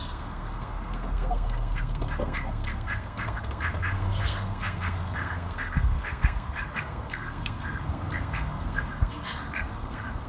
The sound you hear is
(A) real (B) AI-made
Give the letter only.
B